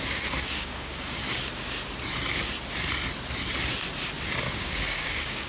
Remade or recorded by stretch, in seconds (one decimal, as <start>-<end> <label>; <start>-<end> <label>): 0.0-1.2 remade; 1.2-4.5 recorded; 4.5-5.5 remade